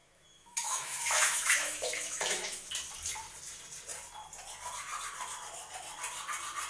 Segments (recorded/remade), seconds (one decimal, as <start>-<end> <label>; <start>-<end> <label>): 0.0-2.7 remade; 2.7-6.7 recorded